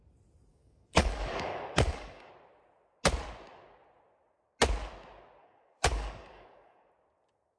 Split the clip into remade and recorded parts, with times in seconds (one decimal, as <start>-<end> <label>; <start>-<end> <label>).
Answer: 0.0-0.5 recorded; 0.5-2.3 remade; 2.3-5.4 recorded; 5.4-6.9 remade; 6.9-7.6 recorded